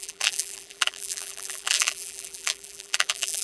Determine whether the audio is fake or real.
fake